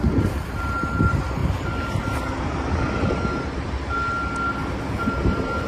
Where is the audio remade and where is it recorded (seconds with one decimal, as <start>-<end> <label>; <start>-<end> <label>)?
0.0-5.7 recorded